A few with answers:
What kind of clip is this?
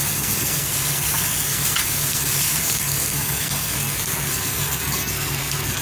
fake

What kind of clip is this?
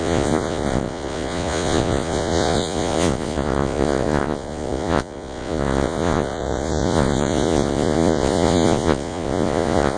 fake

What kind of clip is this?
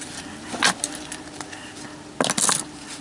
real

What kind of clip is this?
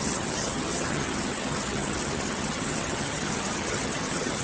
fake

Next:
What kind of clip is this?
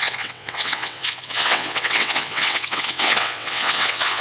fake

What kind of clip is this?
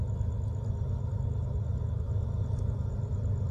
real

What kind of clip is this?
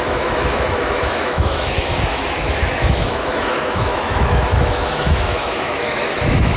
fake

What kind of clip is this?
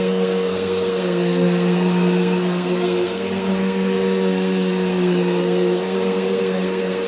fake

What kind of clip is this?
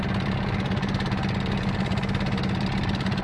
real